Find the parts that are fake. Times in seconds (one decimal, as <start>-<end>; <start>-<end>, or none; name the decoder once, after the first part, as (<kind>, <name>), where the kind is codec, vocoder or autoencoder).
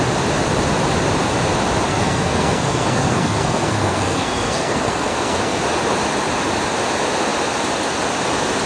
1.9-5.6 (codec, SNAC)